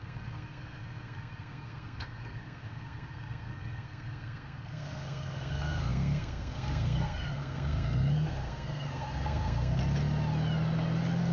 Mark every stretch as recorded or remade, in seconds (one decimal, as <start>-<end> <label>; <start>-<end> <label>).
0.0-9.8 remade; 9.8-11.3 recorded